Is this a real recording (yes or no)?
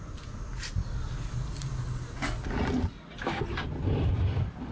yes